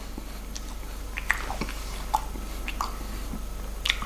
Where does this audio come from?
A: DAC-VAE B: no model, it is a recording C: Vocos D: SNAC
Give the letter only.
B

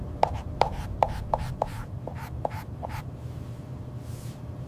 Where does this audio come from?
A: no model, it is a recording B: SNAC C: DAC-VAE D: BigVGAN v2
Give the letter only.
D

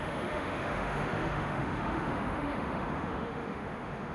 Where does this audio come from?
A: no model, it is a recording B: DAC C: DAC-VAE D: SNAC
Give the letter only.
C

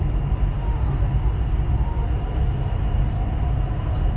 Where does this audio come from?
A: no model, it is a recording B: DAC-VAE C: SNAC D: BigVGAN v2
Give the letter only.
A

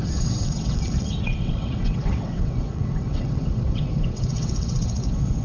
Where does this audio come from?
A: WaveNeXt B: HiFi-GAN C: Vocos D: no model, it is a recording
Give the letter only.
A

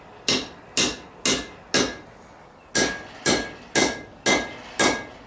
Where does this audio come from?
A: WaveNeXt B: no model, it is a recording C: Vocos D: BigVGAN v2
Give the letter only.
B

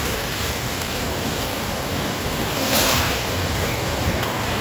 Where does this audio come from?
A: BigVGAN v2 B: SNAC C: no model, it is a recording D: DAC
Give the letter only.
D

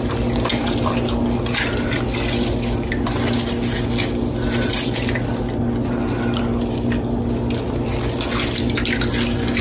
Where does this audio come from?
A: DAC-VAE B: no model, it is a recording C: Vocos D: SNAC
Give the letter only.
B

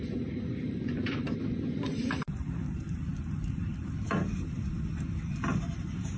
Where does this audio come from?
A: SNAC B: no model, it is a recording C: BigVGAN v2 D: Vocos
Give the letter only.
C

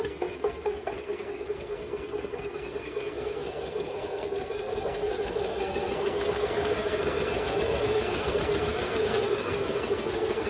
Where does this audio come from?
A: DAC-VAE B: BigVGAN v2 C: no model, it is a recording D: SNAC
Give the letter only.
D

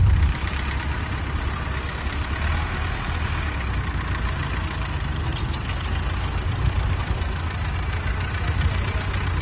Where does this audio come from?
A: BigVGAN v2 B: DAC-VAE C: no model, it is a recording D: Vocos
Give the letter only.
C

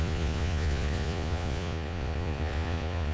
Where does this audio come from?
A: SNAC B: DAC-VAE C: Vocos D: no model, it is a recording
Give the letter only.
C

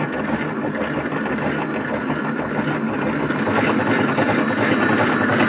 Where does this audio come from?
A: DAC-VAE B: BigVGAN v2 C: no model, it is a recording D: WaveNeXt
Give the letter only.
C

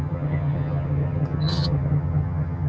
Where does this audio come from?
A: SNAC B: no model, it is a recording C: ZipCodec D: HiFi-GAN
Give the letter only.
D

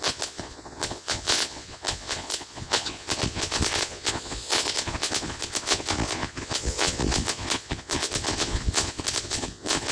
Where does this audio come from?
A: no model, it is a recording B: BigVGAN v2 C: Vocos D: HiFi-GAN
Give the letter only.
C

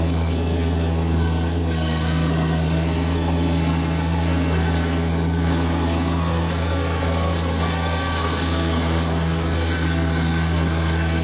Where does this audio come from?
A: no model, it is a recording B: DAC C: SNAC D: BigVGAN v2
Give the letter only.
C